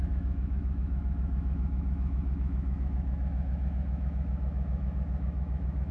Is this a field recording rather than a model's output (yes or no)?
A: no